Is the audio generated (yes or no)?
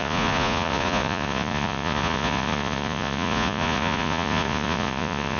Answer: yes